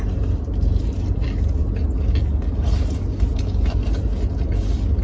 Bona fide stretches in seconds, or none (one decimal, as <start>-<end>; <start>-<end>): 0.0-5.0